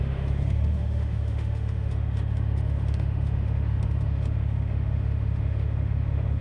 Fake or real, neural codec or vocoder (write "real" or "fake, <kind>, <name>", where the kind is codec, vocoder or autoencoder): fake, autoencoder, DAC-VAE